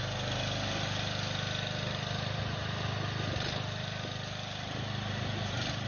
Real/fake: real